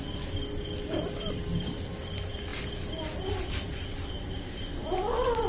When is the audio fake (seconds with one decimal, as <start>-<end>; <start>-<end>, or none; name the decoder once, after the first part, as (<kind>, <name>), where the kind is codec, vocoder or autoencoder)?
none